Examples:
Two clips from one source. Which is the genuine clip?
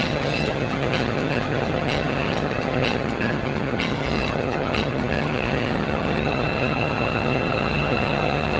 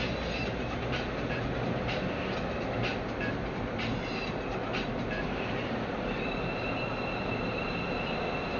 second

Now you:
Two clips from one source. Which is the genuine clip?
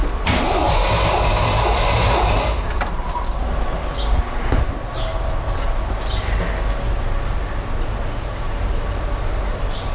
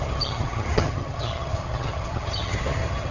first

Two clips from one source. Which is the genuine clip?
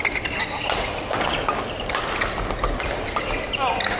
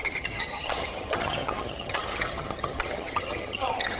first